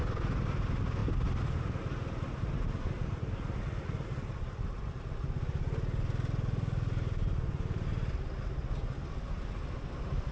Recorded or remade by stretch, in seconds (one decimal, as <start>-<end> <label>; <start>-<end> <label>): 0.0-10.3 recorded